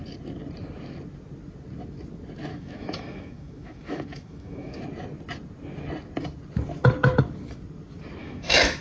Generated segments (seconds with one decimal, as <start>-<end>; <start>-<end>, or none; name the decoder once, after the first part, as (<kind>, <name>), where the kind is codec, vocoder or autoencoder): 2.5-4.8 (autoencoder, DAC-VAE); 8.2-8.8